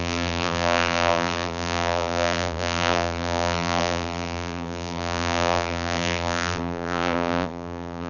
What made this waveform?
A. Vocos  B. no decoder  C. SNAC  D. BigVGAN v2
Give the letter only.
D